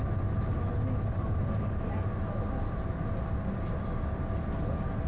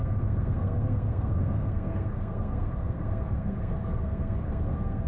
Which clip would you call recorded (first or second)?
first